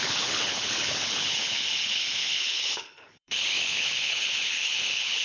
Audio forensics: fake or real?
fake